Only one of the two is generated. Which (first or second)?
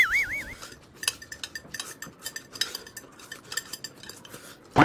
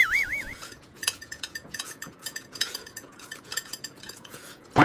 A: second